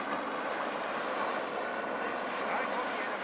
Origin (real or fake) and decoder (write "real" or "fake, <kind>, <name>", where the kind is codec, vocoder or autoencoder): real